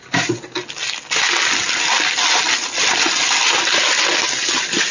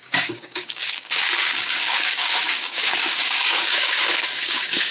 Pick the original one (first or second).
first